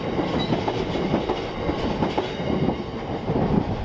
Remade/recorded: recorded